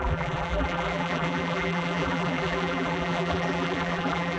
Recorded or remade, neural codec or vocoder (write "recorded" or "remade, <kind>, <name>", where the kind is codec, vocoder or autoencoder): remade, vocoder, BigVGAN v2